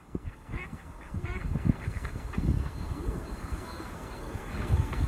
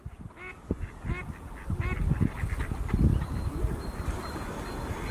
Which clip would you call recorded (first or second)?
second